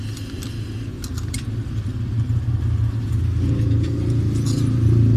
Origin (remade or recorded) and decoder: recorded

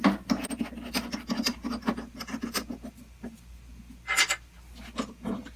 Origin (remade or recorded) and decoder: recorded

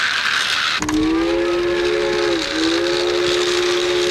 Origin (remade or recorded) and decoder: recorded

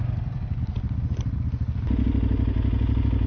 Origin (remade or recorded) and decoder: recorded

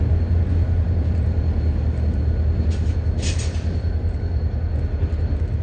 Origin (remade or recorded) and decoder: recorded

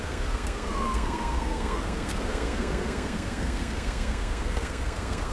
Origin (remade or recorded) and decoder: remade, codec, SNAC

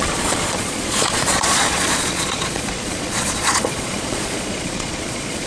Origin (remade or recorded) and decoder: remade, vocoder, Vocos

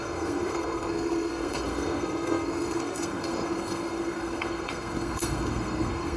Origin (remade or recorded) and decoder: remade, codec, SNAC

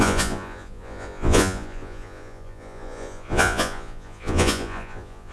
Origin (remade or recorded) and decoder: remade, vocoder, Vocos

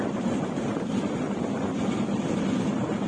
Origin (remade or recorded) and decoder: recorded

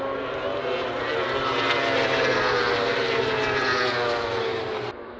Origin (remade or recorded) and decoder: recorded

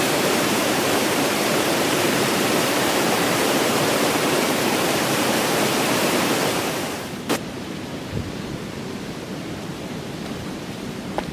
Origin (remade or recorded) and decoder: remade, vocoder, BigVGAN v2